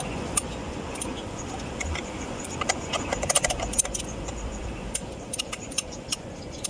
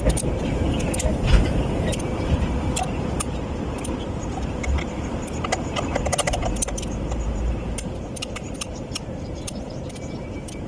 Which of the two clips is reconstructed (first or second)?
first